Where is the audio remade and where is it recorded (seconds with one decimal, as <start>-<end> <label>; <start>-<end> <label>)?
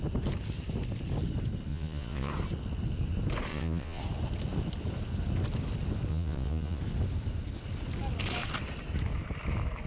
0.0-1.7 recorded; 1.7-2.3 remade; 2.3-3.5 recorded; 3.5-4.0 remade; 4.0-6.1 recorded; 6.1-6.8 remade; 6.8-9.9 recorded